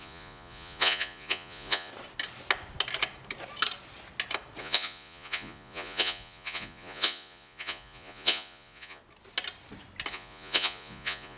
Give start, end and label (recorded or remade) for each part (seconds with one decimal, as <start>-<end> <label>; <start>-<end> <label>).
0.0-1.9 remade; 1.9-4.6 recorded; 4.6-9.0 remade; 9.0-10.1 recorded; 10.1-11.4 remade